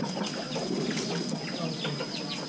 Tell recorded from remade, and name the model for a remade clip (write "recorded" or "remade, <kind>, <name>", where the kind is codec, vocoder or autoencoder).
recorded